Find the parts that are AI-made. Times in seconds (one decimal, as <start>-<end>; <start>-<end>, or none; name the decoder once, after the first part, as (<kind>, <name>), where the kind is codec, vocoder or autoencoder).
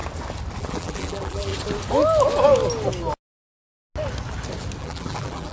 0.6-1.5 (vocoder, BigVGAN v2); 4.8-5.5